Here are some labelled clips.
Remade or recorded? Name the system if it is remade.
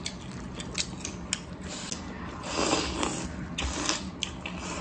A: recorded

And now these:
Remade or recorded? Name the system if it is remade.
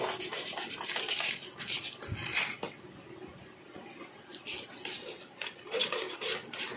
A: recorded